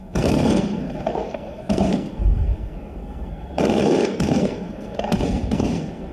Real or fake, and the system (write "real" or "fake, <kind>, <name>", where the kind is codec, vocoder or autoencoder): fake, codec, SNAC